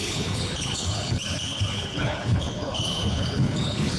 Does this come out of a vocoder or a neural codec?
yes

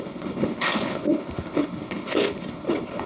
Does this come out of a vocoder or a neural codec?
yes